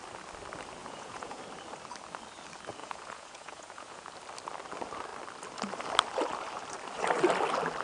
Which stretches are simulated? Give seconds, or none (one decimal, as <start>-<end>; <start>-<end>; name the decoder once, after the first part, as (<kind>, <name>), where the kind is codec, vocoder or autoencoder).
0.8-1.4 (vocoder, Vocos); 2.8-4.1